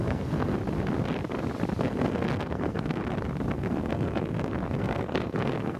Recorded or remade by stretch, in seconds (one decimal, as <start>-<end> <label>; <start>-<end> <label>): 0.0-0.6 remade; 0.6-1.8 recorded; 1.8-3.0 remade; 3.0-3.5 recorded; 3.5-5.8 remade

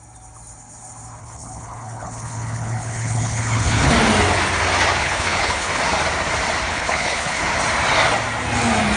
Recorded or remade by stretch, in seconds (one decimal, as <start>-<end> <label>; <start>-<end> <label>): 0.0-1.2 recorded; 1.2-3.9 remade; 3.9-5.0 recorded; 5.0-5.8 remade; 5.8-6.7 recorded; 6.7-7.4 remade; 7.4-9.0 recorded

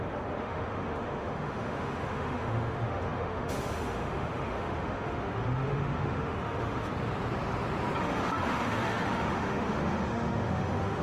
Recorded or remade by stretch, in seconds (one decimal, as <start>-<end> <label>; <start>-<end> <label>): 0.0-6.9 remade; 6.9-8.0 recorded; 8.0-11.0 remade

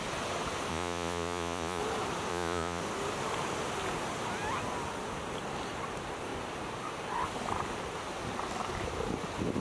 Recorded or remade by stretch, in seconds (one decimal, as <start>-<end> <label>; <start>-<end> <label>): 0.0-0.7 recorded; 0.7-1.8 remade; 1.8-2.3 recorded; 2.3-2.8 remade; 2.8-9.6 recorded

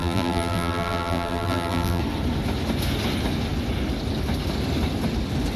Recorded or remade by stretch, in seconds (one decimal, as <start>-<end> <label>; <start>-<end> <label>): 0.0-2.0 remade; 2.0-5.6 recorded

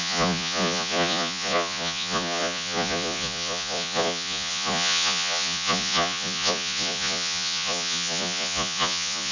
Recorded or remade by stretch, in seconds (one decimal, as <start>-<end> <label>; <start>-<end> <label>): 0.0-9.3 remade

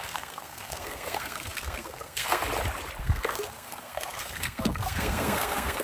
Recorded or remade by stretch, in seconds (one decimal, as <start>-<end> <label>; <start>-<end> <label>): 0.0-2.4 remade; 2.4-3.0 recorded; 3.0-5.8 remade